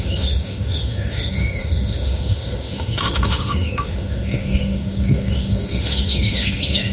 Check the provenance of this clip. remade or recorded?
remade